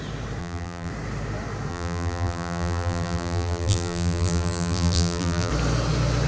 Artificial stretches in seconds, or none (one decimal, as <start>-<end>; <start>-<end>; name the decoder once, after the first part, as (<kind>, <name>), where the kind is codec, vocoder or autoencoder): 0.4-0.9 (vocoder, BigVGAN v2); 1.7-5.5